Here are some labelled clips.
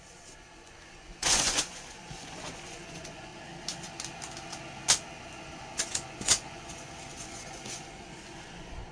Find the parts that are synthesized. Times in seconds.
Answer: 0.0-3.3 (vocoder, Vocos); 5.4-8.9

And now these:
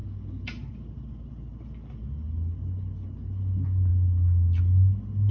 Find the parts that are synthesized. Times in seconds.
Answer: none

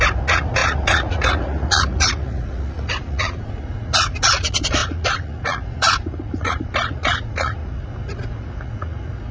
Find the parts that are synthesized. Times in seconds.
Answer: 0.0-9.3 (vocoder, Vocos)

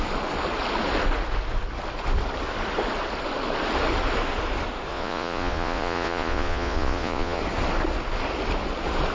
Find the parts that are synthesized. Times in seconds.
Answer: 4.9-7.4 (vocoder, Vocos)

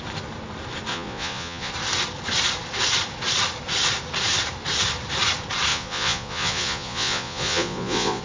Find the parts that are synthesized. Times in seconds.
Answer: 0.9-1.7 (vocoder, Vocos); 5.7-8.2

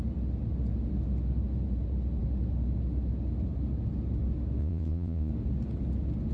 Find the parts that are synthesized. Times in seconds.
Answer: 4.6-5.3 (vocoder, Vocos)